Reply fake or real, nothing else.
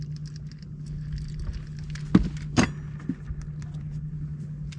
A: real